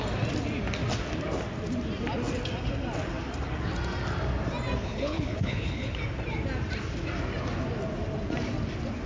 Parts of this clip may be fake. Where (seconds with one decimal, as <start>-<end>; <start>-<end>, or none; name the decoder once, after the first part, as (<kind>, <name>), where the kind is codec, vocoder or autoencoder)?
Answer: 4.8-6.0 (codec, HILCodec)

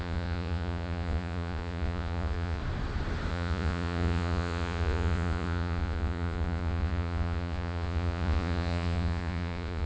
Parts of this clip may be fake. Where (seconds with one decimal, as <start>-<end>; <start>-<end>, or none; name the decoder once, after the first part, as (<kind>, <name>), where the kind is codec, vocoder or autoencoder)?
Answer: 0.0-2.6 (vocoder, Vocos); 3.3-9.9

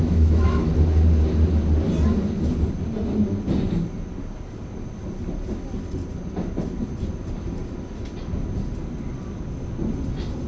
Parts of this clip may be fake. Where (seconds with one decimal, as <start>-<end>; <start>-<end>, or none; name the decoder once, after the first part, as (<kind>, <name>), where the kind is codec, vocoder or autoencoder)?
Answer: 0.0-0.7 (autoencoder, DAC-VAE)

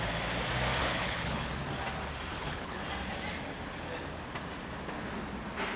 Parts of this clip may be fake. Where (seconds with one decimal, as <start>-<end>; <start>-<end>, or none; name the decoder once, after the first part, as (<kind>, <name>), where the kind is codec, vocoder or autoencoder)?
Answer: 0.8-1.5 (codec, HILCodec); 2.3-2.8

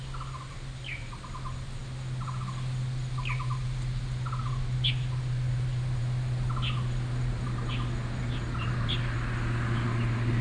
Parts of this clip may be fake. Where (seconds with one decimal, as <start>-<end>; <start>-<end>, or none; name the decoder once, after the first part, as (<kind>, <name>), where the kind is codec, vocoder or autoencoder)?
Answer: none